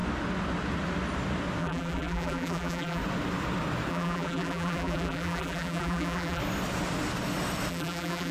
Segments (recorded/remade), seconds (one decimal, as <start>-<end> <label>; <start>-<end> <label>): 0.0-1.6 recorded; 1.6-3.0 remade; 3.0-3.9 recorded; 3.9-6.4 remade; 6.4-7.7 recorded; 7.7-8.3 remade